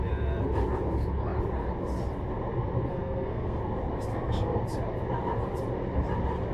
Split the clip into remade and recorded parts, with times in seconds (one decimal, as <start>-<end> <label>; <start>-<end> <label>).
0.0-2.9 recorded; 2.9-3.6 remade; 3.6-4.1 recorded; 4.1-4.6 remade; 4.6-6.5 recorded